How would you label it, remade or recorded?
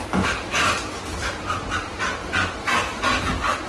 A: recorded